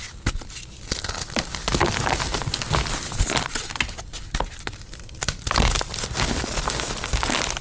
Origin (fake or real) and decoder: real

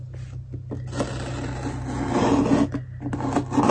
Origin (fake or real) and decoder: real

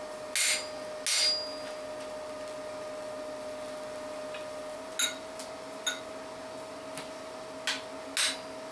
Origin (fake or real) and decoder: real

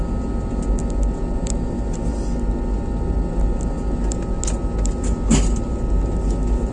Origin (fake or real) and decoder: real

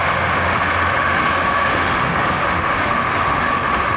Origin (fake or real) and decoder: fake, autoencoder, DAC-VAE